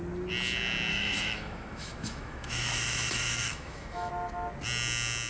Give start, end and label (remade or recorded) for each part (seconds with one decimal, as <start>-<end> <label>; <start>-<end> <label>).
0.0-0.9 recorded; 0.9-4.1 remade; 4.1-5.3 recorded